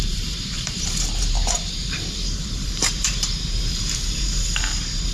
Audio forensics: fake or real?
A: fake